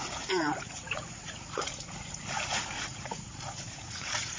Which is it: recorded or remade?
remade